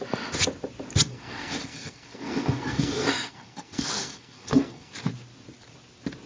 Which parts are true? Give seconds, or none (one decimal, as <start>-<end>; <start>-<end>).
0.0-1.1; 4.9-6.3